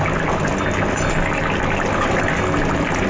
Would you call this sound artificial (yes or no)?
no